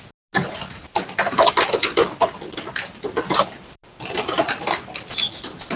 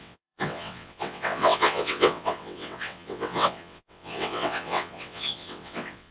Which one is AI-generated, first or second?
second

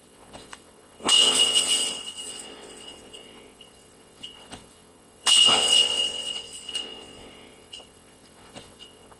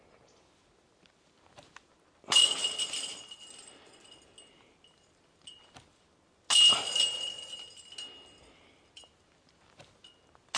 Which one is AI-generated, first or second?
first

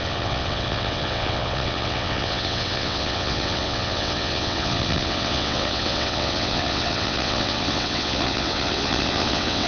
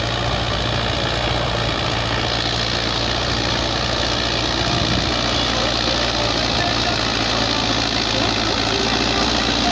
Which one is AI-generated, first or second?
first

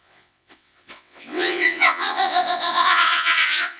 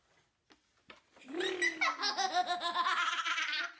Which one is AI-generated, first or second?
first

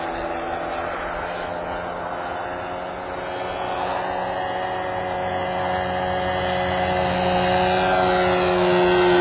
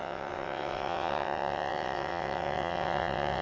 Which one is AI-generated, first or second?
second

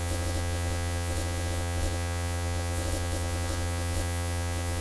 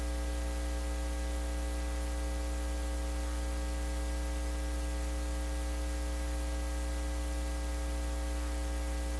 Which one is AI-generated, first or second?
first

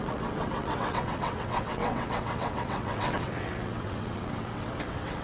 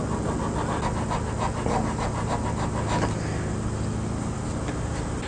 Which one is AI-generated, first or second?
first